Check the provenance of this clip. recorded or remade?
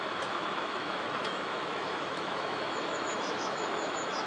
remade